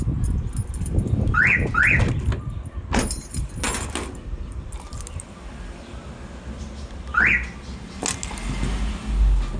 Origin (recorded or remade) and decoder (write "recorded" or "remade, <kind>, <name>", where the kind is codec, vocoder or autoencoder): recorded